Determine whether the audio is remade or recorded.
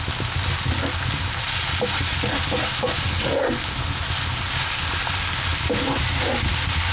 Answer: recorded